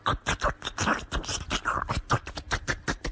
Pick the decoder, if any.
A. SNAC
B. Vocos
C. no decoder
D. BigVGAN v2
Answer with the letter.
C